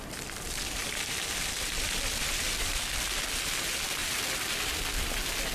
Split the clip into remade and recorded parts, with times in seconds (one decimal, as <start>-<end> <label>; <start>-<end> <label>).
0.0-0.8 recorded; 0.8-3.3 remade; 3.3-4.0 recorded; 4.0-4.7 remade; 4.7-5.5 recorded